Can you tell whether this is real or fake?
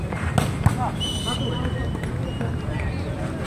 real